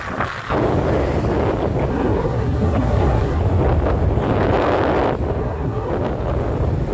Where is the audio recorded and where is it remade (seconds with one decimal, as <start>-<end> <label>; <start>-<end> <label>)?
0.0-1.9 recorded; 1.9-3.4 remade; 3.4-5.4 recorded; 5.4-5.9 remade; 5.9-6.9 recorded